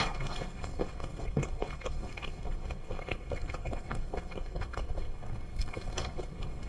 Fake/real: fake